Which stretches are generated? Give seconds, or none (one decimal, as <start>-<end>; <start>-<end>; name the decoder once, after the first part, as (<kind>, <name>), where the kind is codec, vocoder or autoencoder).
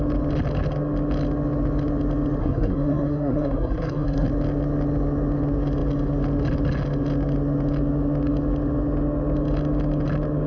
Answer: 2.4-4.3 (codec, SNAC)